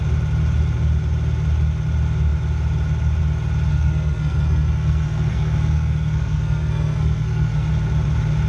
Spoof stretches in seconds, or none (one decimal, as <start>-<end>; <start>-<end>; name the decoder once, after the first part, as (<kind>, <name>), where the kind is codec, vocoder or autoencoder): 3.7-7.7 (codec, SNAC)

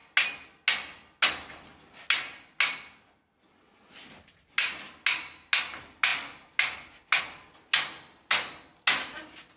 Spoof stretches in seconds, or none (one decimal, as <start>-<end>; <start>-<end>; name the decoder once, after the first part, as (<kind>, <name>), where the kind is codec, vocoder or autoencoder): none

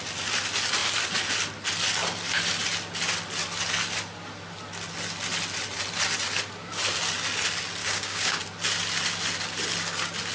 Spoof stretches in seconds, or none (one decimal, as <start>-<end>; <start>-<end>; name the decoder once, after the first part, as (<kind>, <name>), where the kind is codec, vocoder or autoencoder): 7.8-8.4 (codec, DAC)

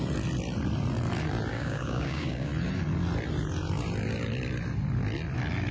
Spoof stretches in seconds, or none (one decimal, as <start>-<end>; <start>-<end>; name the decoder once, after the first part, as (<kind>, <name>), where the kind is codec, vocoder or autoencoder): 1.5-2.5 (codec, DAC)

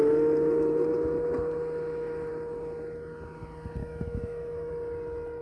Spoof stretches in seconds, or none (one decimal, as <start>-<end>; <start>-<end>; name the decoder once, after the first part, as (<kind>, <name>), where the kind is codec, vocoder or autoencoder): 3.8-4.7 (autoencoder, DAC-VAE)

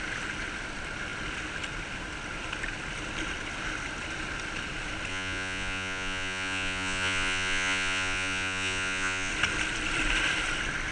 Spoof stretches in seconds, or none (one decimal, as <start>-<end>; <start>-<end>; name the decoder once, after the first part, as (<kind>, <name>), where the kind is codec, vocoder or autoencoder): 5.1-9.3 (vocoder, Vocos)

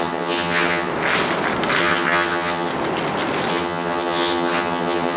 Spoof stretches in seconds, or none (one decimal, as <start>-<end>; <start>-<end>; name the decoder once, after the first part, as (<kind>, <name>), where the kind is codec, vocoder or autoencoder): 0.0-0.9 (vocoder, HiFi-GAN); 1.8-2.7; 3.5-5.2

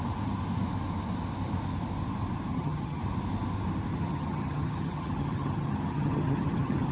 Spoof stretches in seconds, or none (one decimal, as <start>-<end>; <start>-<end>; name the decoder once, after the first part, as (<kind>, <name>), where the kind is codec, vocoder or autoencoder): 2.5-3.0 (vocoder, HiFi-GAN); 3.9-6.9